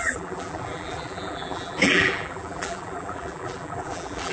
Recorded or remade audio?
remade